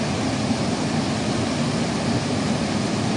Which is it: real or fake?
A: real